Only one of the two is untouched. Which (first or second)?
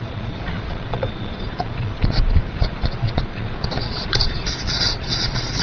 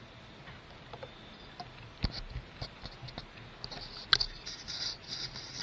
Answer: second